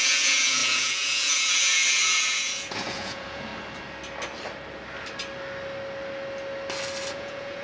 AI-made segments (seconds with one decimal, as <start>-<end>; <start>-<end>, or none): 0.0-3.5; 7.1-7.6